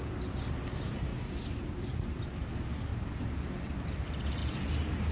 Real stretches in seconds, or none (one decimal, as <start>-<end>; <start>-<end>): 0.0-1.1; 2.2-2.9; 3.5-5.1